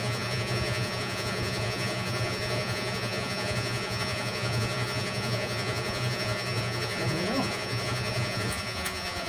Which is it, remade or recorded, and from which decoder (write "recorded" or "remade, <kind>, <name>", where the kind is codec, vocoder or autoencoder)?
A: remade, vocoder, Vocos